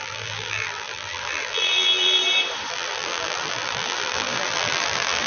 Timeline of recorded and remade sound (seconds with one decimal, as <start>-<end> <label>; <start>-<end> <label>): 0.0-2.2 remade; 2.2-2.7 recorded; 2.7-5.3 remade